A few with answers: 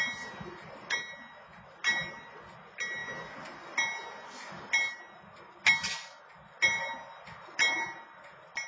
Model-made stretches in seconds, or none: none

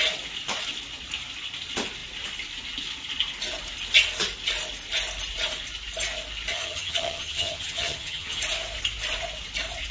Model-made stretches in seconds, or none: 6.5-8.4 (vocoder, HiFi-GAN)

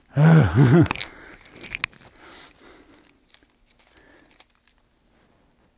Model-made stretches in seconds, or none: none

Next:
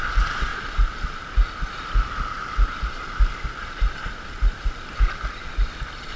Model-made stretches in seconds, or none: 3.6-4.5 (vocoder, BigVGAN v2)